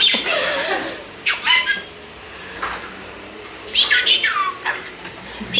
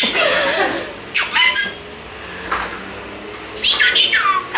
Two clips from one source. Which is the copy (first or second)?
first